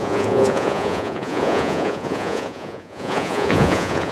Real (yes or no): no